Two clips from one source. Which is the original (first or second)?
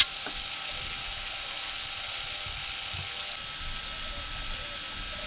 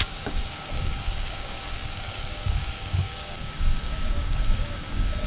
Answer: first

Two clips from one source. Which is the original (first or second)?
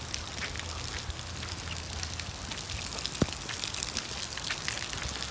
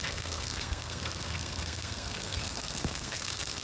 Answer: first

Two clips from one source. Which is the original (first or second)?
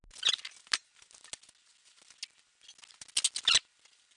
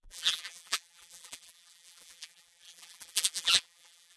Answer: first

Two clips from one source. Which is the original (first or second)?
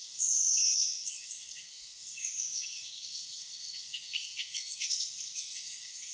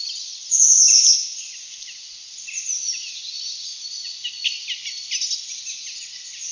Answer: second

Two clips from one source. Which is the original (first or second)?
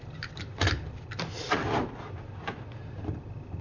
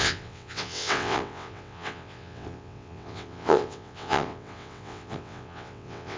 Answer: first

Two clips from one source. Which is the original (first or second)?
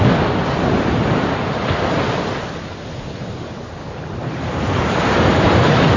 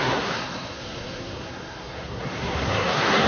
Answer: first